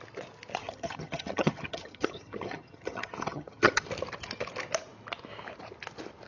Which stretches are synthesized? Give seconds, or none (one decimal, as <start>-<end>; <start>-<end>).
0.6-3.9